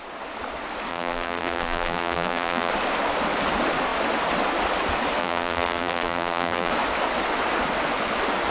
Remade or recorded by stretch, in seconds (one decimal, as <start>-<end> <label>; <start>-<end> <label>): 0.0-0.9 recorded; 0.9-2.7 remade; 2.7-5.2 recorded; 5.2-6.7 remade; 6.7-8.5 recorded